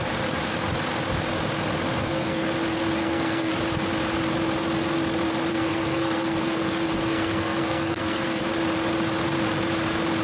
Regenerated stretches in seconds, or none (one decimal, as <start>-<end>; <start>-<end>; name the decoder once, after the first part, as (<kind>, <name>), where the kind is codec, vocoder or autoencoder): 2.0-2.5 (codec, SNAC); 3.0-3.5; 5.5-8.4